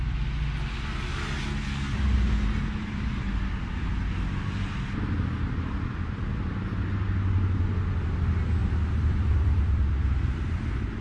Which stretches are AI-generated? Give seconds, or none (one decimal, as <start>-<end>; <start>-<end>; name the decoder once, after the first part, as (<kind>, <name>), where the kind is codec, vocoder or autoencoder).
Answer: none